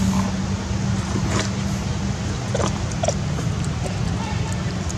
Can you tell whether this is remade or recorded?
recorded